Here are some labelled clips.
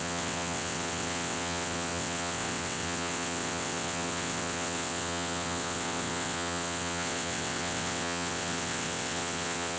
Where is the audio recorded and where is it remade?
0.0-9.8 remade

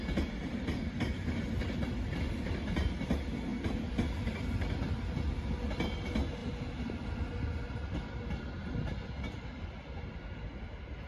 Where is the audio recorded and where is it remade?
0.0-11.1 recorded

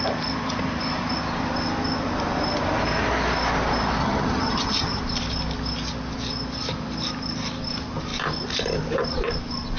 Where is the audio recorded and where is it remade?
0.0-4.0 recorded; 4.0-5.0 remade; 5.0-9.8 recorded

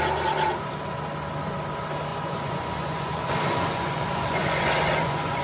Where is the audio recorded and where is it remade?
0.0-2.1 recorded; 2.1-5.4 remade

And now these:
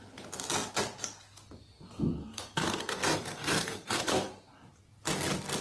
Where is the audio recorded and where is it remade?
0.0-2.2 recorded; 2.2-4.5 remade; 4.5-5.6 recorded